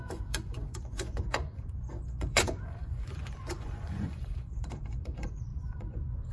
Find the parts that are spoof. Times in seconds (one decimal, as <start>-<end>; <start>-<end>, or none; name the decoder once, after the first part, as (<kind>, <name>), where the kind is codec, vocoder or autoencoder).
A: 0.0-6.3 (vocoder, Vocos)